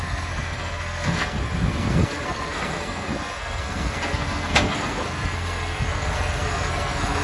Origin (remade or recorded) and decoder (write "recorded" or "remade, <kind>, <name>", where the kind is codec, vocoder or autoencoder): remade, codec, SNAC